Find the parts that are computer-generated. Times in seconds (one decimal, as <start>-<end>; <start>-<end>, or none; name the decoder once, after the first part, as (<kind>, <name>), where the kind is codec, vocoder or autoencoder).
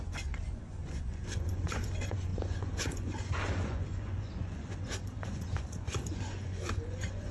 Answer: 0.0-7.3 (vocoder, Vocos)